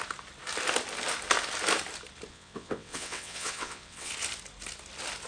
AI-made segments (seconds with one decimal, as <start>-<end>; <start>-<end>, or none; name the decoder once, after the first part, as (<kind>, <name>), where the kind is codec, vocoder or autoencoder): 2.3-4.1 (vocoder, WaveNeXt)